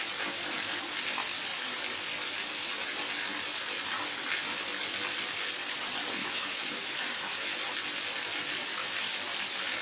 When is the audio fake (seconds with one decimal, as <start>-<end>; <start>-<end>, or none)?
6.2-7.5